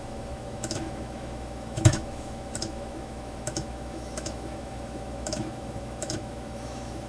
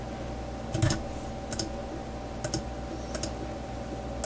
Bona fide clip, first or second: second